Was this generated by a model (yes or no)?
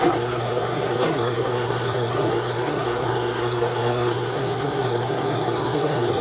yes